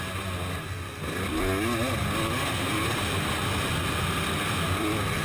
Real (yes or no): yes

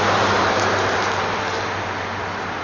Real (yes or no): yes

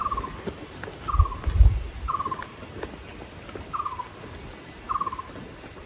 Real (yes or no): yes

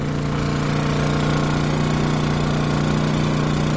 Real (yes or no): yes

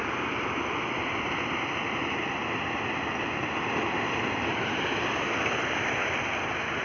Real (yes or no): yes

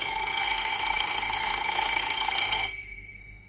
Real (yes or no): no